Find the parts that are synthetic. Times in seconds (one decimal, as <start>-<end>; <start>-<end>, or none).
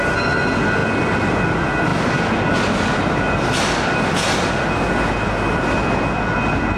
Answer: none